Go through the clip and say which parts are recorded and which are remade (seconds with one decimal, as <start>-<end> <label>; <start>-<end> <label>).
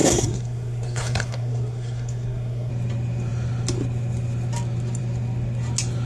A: 0.0-2.7 remade; 2.7-6.1 recorded